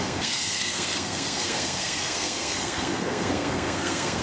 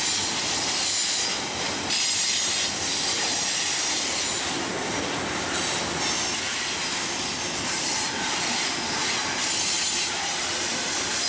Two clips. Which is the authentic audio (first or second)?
second